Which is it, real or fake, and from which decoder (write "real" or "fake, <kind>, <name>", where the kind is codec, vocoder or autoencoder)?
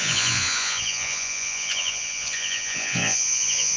fake, vocoder, Vocos